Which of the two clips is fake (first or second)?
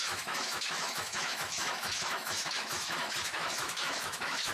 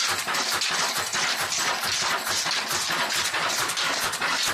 first